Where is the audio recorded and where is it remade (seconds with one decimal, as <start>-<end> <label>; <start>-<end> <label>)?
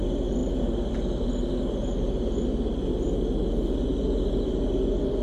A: 0.0-5.2 recorded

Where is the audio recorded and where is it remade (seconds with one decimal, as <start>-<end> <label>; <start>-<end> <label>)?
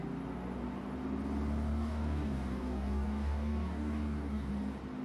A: 0.0-1.7 recorded; 1.7-4.5 remade; 4.5-5.0 recorded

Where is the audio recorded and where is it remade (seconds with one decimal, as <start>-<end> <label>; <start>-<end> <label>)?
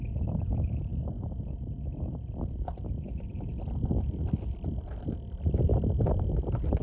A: 0.0-6.8 recorded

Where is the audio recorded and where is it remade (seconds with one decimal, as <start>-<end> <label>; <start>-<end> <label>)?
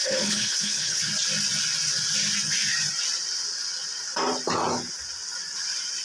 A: 0.0-1.0 remade; 1.0-6.0 recorded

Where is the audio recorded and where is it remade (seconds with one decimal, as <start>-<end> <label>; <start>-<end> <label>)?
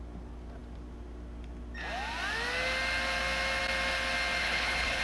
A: 0.0-4.4 recorded; 4.4-5.0 remade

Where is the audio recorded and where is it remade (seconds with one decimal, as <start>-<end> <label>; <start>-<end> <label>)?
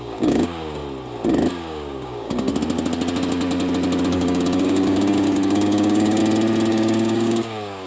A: 0.0-0.8 remade; 0.8-1.5 recorded; 1.5-2.5 remade; 2.5-4.1 recorded; 4.1-6.2 remade; 6.2-6.7 recorded; 6.7-7.9 remade